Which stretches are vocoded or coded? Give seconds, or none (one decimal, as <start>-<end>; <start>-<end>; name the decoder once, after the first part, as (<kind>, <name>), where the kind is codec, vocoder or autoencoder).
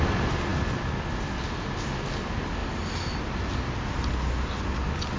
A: none